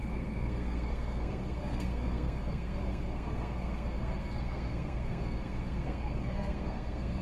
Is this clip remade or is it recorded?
remade